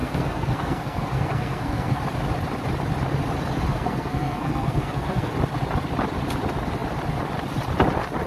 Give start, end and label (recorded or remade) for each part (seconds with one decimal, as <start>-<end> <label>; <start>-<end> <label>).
0.0-2.0 remade; 2.0-3.7 recorded; 3.7-5.3 remade; 5.3-8.3 recorded